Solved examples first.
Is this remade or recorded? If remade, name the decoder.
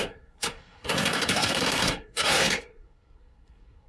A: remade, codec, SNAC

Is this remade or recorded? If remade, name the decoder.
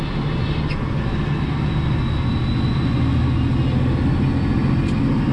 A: recorded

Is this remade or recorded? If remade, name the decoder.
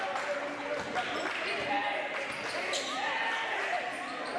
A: recorded